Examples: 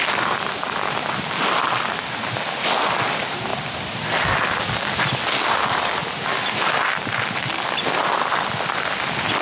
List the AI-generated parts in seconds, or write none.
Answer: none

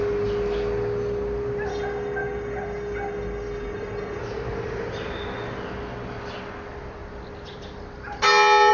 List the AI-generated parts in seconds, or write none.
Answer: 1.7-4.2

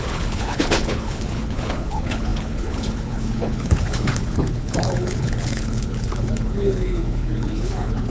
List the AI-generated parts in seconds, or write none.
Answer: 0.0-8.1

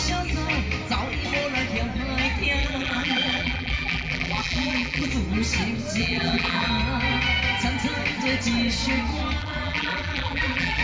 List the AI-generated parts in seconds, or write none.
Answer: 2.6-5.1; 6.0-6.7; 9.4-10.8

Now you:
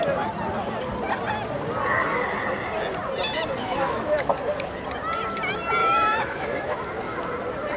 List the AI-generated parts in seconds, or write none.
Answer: 3.6-4.3; 5.8-6.9

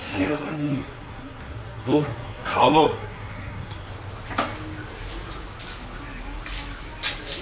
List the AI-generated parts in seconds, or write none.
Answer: 0.0-3.9

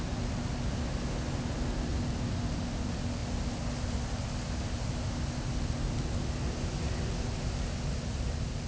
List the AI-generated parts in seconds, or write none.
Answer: none

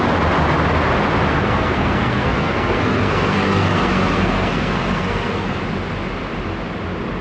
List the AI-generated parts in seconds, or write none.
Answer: 1.3-5.6